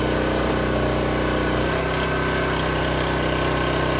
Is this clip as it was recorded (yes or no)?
yes